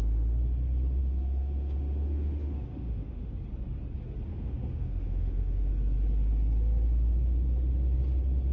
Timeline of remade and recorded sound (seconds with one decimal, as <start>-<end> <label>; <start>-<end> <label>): 0.0-1.0 recorded; 1.0-3.3 remade; 3.3-4.3 recorded; 4.3-5.7 remade; 5.7-8.5 recorded